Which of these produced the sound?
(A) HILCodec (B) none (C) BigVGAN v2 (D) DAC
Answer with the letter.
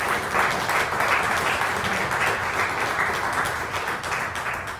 B